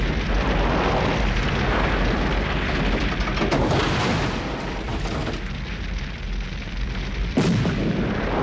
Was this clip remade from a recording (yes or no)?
no